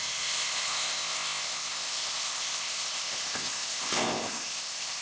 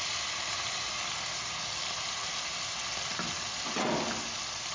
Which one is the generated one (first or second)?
first